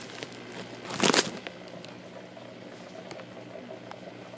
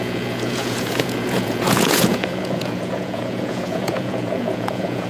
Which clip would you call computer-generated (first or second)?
second